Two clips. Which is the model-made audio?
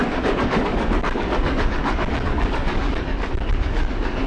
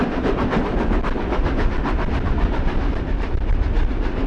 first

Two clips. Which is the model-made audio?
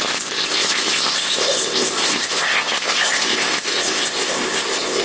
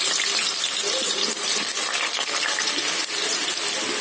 first